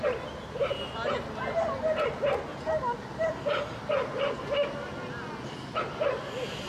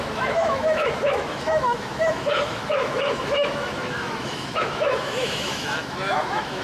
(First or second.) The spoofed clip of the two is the second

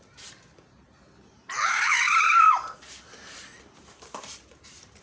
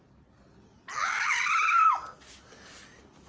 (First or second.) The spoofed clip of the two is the first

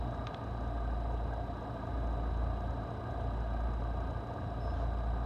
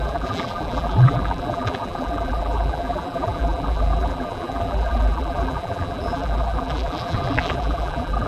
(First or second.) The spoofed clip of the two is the second